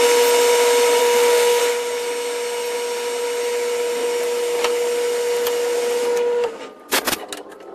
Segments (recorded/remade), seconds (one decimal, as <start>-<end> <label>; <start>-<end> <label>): 0.0-1.0 recorded; 1.0-1.6 remade; 1.6-7.7 recorded